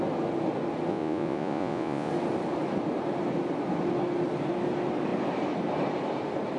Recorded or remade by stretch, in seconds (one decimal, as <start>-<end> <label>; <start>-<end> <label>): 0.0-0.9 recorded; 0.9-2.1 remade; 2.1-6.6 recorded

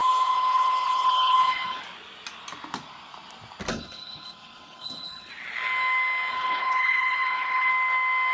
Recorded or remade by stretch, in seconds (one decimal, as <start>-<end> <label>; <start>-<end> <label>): 0.0-1.8 remade; 1.8-3.7 recorded; 3.7-5.3 remade; 5.3-6.3 recorded; 6.3-7.7 remade; 7.7-8.3 recorded

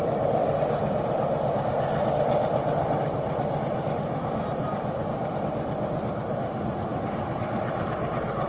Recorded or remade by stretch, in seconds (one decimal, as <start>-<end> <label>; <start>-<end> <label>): 0.0-8.5 recorded